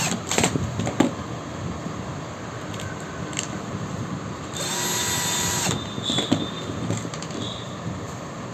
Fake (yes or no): no